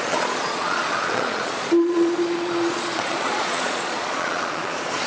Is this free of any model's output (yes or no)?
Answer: no